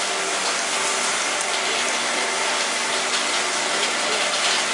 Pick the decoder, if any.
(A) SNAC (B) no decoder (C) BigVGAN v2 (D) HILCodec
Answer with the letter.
B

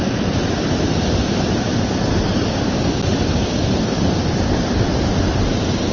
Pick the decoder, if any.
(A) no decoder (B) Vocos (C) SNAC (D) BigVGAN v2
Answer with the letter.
A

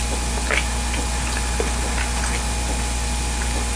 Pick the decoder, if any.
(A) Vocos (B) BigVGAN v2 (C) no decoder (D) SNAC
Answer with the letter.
C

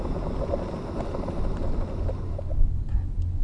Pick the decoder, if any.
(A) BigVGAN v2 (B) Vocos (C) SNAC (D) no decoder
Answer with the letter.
D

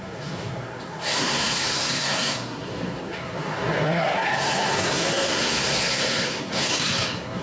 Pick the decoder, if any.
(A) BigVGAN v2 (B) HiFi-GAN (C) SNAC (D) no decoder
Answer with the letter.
C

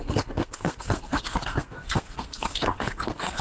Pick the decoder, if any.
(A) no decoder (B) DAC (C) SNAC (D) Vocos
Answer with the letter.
C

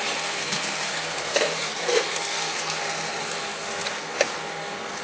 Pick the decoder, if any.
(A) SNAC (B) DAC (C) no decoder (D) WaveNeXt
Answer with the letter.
A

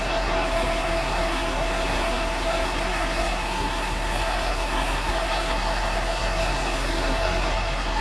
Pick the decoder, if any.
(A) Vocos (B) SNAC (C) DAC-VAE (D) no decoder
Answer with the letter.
B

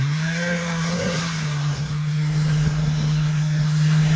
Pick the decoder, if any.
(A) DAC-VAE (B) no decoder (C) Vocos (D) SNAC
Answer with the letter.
D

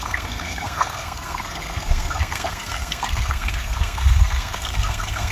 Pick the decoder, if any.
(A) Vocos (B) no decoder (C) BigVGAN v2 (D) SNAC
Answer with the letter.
D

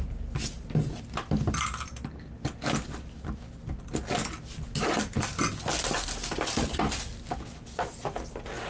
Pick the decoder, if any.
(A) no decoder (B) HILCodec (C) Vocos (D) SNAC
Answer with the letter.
A